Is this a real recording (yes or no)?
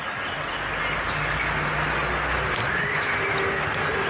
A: yes